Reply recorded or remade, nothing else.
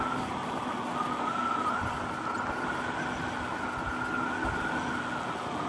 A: recorded